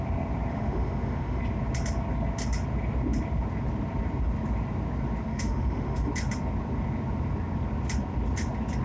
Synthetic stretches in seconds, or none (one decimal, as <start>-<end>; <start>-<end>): 0.5-1.4; 5.3-6.1